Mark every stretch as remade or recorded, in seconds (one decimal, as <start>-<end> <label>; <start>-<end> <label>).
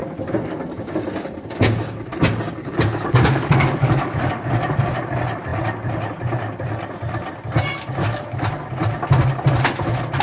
0.0-2.6 recorded; 2.6-4.3 remade; 4.3-8.0 recorded; 8.0-8.5 remade; 8.5-10.2 recorded